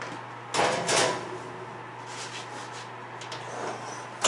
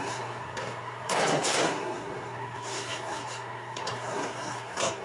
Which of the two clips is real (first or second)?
first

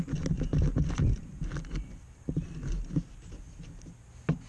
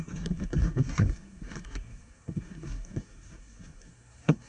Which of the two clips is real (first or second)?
first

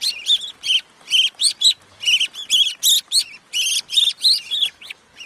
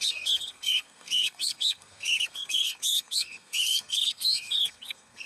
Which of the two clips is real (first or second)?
first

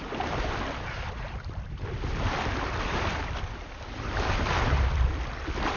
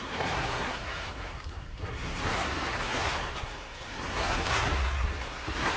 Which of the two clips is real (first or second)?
first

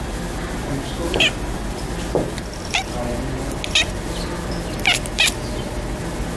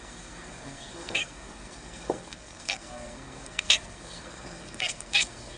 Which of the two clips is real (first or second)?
first